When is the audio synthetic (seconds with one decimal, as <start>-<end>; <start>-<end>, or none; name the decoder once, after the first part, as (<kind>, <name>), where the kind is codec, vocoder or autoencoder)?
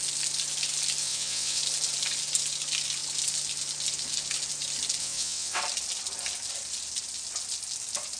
1.0-1.6 (vocoder, WaveNeXt); 5.0-5.6